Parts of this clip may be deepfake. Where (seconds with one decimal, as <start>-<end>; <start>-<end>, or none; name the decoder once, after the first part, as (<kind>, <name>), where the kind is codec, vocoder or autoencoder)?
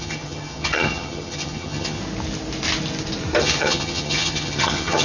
0.0-2.0 (vocoder, HiFi-GAN); 3.4-5.0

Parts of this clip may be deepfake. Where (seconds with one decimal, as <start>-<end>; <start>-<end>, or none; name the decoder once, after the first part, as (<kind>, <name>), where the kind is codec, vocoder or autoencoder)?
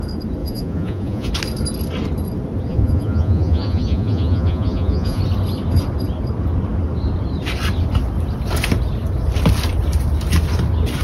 0.4-1.3 (vocoder, Vocos); 2.7-5.2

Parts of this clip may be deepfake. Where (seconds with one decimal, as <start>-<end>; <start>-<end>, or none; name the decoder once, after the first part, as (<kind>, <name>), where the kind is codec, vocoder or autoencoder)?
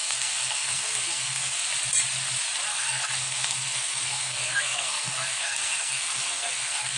0.0-1.7 (codec, SNAC); 2.7-7.0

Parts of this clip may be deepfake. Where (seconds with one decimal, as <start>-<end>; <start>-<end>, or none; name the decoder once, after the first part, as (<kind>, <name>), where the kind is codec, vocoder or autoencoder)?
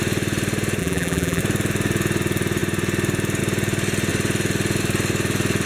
0.8-1.4 (vocoder, BigVGAN v2)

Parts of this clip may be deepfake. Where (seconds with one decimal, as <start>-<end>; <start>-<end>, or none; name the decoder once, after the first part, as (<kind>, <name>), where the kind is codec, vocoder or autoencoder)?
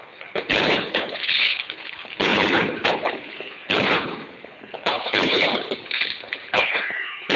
0.0-7.4 (codec, HILCodec)